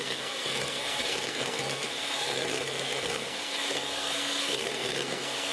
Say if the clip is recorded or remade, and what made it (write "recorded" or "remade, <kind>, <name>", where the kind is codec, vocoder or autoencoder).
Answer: remade, codec, SNAC